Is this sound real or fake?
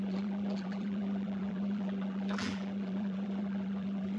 fake